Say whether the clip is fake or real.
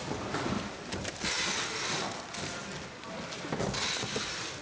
real